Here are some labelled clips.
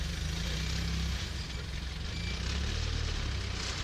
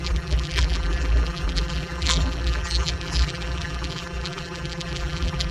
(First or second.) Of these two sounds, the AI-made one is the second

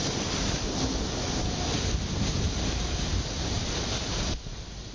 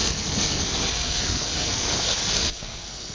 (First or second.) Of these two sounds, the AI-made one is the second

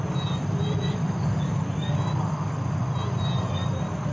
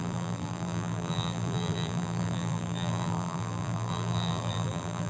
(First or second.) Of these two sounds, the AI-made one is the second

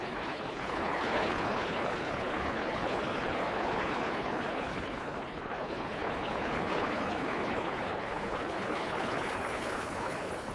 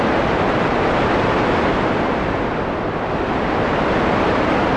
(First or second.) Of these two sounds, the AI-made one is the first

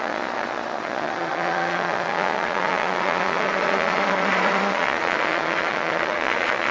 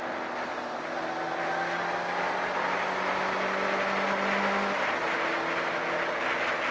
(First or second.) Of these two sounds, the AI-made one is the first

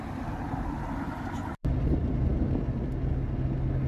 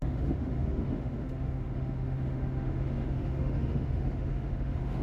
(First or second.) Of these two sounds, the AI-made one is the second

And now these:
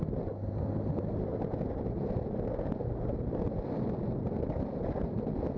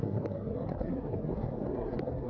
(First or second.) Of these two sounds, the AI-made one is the second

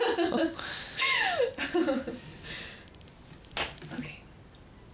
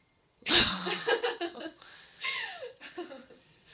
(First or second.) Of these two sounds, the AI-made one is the second